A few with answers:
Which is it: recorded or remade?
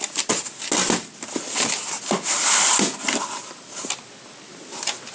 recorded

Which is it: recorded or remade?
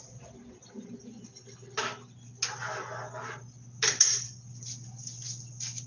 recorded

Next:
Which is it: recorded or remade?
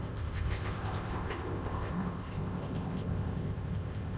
remade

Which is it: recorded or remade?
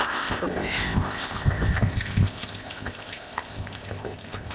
remade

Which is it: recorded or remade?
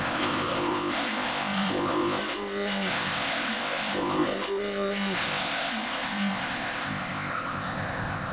remade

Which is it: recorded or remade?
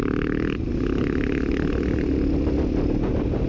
recorded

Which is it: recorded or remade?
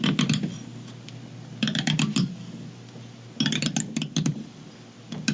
recorded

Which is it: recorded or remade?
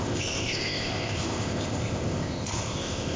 remade